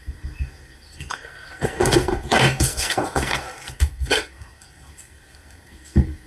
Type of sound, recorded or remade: remade